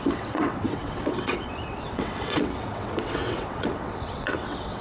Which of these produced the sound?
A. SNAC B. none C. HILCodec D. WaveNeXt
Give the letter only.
D